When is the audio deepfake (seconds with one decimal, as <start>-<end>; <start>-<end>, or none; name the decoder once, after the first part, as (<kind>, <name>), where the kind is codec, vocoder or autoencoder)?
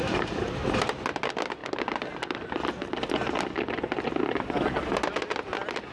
none